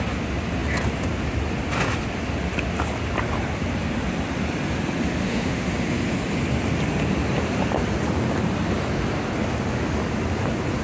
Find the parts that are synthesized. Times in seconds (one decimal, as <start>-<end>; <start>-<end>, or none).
5.2-5.7

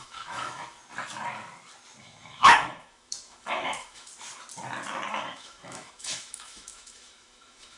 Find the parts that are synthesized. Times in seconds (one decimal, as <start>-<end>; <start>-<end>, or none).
0.0-0.8; 2.0-4.1; 5.1-7.8

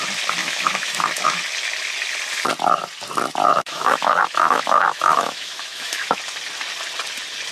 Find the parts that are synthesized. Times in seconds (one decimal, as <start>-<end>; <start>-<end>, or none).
0.4-1.4; 3.5-6.2

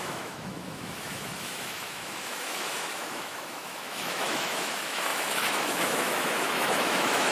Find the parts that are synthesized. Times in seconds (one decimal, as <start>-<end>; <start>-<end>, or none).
0.0-7.3